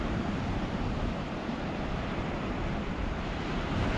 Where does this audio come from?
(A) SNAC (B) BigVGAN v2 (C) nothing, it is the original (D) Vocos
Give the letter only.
B